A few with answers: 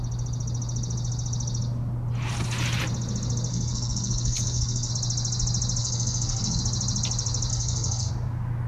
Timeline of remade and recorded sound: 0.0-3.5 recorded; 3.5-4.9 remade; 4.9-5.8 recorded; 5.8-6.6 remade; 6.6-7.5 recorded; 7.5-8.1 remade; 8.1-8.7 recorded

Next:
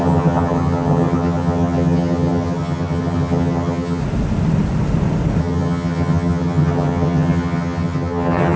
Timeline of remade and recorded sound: 0.0-4.0 remade; 4.0-5.4 recorded; 5.4-8.6 remade